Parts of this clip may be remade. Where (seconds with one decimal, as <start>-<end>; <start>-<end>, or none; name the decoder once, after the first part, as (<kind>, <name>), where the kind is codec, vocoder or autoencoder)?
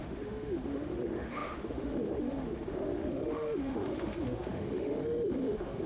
0.0-5.9 (autoencoder, DAC-VAE)